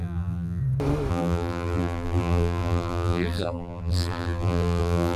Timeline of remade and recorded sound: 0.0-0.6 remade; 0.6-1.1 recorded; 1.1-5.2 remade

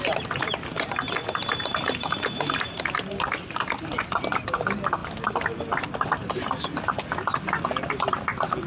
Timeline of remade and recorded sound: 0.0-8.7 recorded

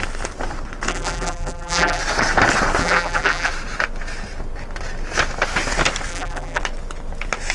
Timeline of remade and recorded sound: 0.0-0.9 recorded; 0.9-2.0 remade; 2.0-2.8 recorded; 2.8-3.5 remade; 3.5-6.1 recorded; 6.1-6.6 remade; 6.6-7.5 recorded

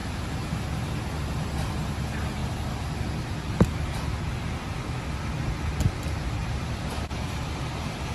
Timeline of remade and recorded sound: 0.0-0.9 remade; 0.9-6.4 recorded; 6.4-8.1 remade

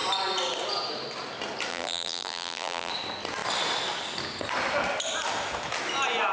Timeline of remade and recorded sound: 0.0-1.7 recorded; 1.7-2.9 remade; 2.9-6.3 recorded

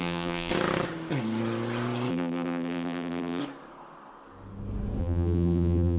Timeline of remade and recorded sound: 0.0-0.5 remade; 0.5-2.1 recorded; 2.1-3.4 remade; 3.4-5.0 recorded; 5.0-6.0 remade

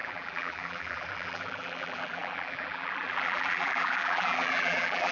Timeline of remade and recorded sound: 0.0-5.1 remade